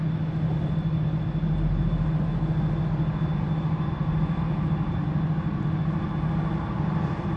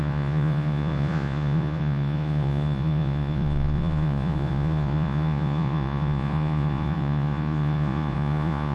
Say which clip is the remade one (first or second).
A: second